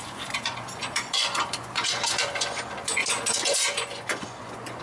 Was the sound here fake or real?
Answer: fake